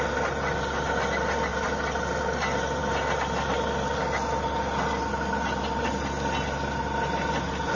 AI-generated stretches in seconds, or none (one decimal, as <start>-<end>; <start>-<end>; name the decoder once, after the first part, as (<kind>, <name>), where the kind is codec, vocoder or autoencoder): none